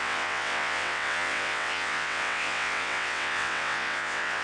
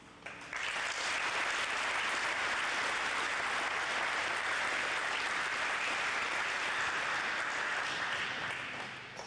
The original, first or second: second